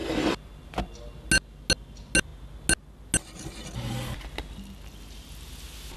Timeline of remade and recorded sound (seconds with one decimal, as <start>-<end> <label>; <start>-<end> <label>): 0.0-6.0 recorded